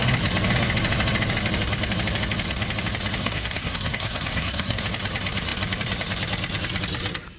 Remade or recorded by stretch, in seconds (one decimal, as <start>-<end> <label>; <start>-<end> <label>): 0.0-3.2 recorded; 3.2-4.8 remade; 4.8-7.4 recorded